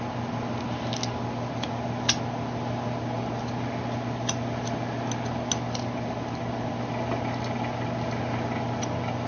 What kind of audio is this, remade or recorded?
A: recorded